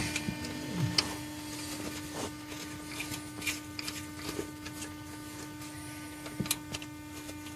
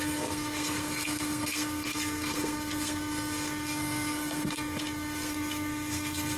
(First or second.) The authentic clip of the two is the first